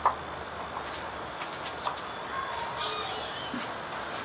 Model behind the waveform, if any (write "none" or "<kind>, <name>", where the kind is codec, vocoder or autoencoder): none